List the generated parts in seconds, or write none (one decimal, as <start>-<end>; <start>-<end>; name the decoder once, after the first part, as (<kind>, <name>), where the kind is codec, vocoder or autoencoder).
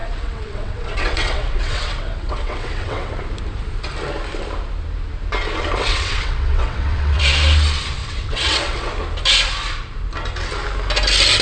0.0-3.1 (vocoder, WaveNeXt); 5.8-7.2; 8.0-8.9